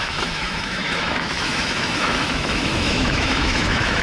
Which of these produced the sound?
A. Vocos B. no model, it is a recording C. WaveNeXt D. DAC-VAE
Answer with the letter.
D